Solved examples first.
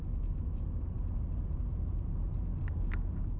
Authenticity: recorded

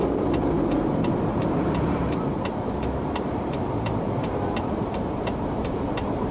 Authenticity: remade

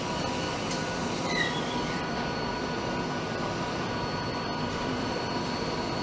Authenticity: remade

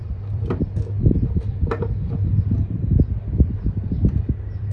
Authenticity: remade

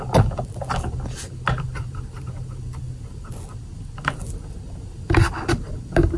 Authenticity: recorded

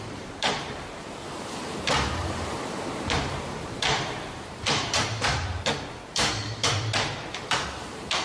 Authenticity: remade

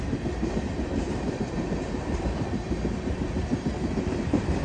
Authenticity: remade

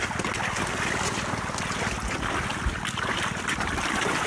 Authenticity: recorded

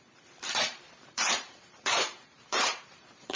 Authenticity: remade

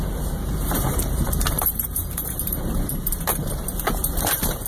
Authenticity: remade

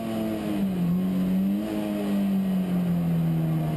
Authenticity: recorded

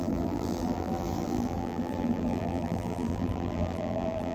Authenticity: remade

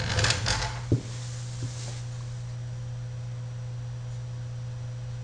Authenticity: recorded